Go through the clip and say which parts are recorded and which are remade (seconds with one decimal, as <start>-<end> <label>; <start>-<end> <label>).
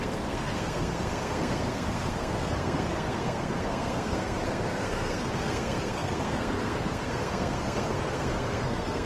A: 0.0-9.1 remade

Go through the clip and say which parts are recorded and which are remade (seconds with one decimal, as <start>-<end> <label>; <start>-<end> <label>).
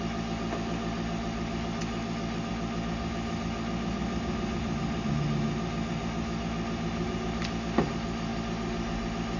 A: 0.0-9.4 recorded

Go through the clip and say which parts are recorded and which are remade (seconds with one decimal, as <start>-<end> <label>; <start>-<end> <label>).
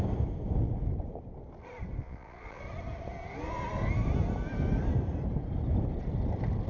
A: 0.0-2.0 recorded; 2.0-2.6 remade; 2.6-6.7 recorded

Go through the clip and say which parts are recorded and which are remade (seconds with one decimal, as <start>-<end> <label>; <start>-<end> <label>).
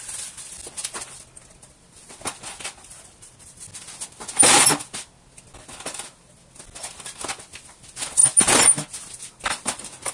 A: 0.0-10.1 recorded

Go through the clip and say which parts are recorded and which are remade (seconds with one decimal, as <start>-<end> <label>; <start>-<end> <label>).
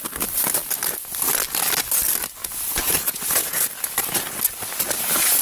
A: 0.0-2.4 recorded; 2.4-3.8 remade; 3.8-5.4 recorded